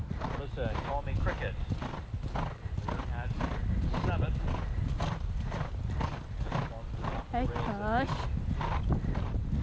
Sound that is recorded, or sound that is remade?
recorded